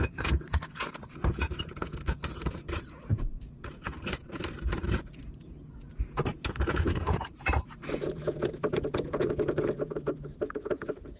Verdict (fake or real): fake